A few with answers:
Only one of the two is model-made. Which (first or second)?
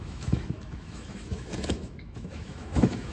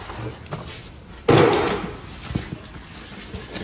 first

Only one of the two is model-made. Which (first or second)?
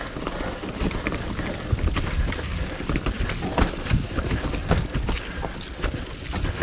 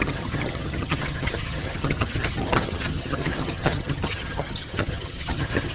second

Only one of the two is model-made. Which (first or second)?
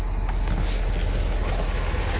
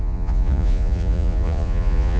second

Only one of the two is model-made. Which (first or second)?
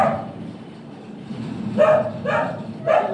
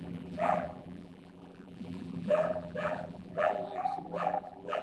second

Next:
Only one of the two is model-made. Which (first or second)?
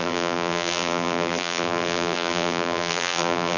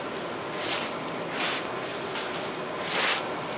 first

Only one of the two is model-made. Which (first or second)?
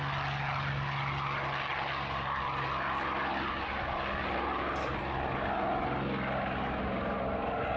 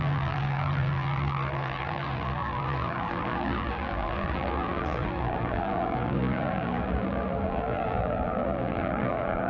second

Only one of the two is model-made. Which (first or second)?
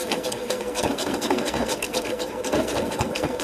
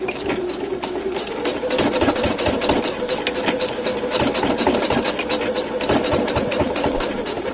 first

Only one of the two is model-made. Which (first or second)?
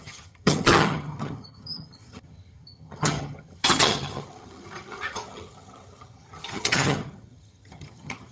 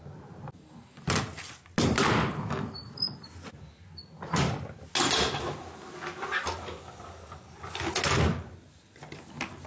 first